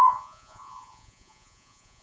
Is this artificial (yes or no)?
yes